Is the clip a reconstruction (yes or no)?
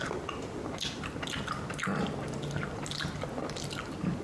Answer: no